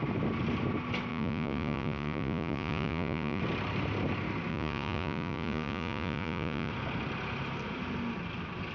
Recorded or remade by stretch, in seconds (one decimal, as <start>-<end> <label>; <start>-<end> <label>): 0.0-1.1 recorded; 1.1-3.4 remade; 3.4-4.5 recorded; 4.5-6.7 remade; 6.7-8.7 recorded